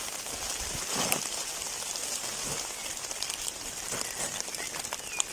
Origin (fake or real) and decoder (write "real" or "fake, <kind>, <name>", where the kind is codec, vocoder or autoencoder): real